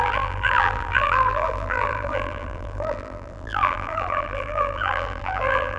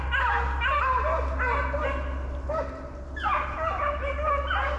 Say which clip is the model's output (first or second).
first